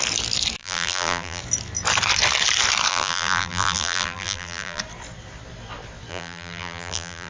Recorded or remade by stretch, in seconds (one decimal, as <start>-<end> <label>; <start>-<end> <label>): 0.0-0.6 recorded; 0.6-1.4 remade; 1.4-2.9 recorded; 2.9-4.8 remade; 4.8-6.1 recorded; 6.1-7.3 remade